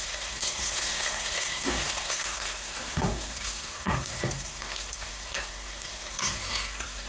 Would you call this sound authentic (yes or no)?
no